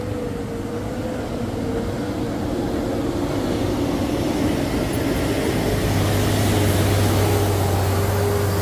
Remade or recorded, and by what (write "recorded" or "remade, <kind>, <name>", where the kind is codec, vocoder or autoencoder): recorded